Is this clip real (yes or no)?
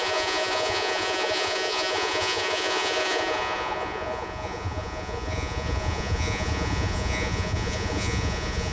no